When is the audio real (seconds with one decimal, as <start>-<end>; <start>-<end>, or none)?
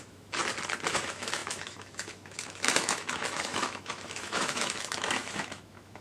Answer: 0.4-0.9